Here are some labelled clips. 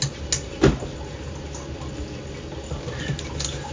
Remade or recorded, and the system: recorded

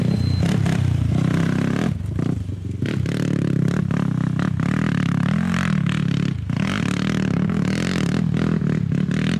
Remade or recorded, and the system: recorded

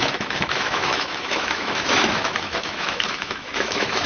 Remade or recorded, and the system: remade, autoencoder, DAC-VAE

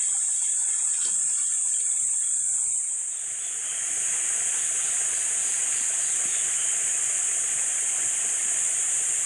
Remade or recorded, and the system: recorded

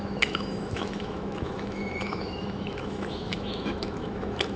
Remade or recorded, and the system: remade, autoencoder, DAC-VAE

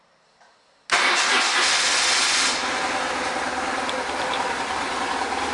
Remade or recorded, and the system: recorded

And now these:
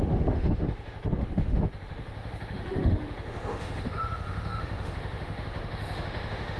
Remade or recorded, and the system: remade, autoencoder, DAC-VAE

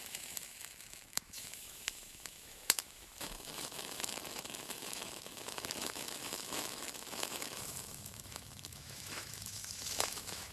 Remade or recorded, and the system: remade, autoencoder, DAC-VAE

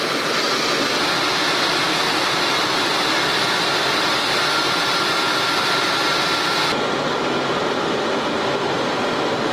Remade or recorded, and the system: recorded